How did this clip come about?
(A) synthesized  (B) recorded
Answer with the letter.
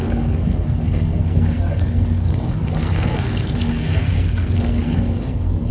A